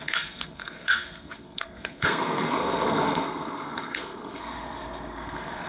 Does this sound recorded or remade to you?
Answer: remade